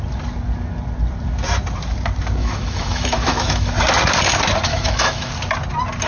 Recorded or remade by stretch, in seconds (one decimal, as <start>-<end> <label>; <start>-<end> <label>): 0.0-2.4 recorded; 2.4-3.7 remade; 3.7-4.7 recorded; 4.7-5.3 remade; 5.3-6.1 recorded